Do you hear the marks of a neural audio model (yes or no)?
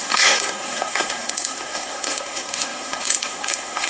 yes